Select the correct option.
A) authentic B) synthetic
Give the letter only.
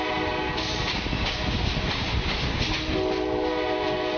A